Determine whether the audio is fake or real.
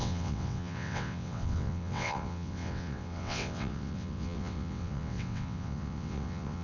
fake